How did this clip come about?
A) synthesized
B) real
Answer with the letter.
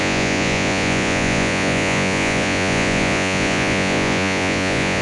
A